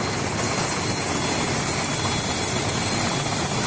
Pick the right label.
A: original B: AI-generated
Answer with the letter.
A